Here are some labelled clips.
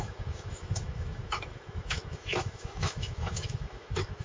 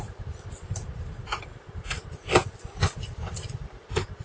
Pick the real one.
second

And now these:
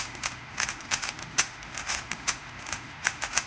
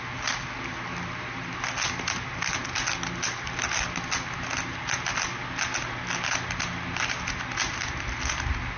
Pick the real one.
second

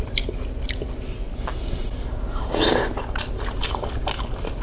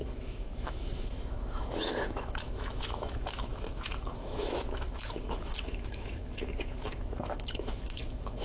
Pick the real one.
first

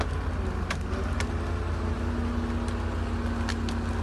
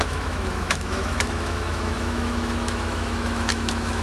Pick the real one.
first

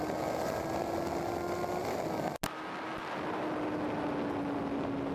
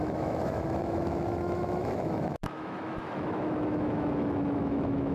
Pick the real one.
first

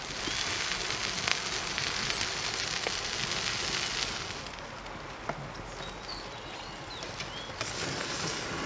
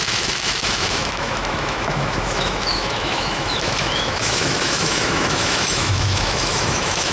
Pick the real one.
first